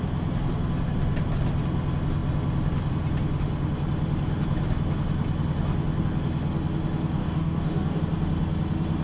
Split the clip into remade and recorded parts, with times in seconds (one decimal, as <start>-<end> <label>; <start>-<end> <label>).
0.0-7.2 recorded; 7.2-8.0 remade; 8.0-9.0 recorded

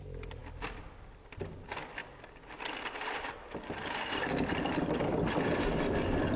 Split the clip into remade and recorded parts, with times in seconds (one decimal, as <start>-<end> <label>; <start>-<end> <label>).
0.0-6.4 recorded

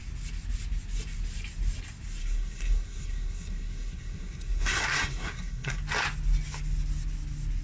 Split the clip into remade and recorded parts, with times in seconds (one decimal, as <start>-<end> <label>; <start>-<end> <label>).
0.0-2.2 recorded; 2.2-5.8 remade; 5.8-7.6 recorded

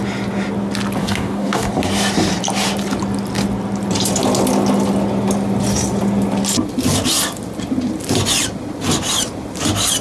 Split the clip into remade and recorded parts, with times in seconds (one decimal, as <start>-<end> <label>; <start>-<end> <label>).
0.0-1.0 recorded; 1.0-1.7 remade; 1.7-10.0 recorded

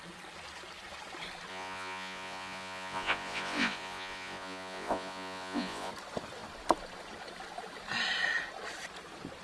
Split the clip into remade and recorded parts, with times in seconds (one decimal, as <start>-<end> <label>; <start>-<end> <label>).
0.0-1.5 recorded; 1.5-5.9 remade; 5.9-9.4 recorded

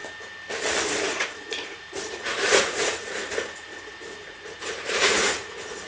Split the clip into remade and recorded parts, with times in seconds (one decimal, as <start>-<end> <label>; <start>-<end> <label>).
0.0-1.0 recorded; 1.0-5.9 remade